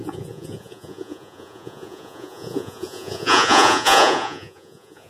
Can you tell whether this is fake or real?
fake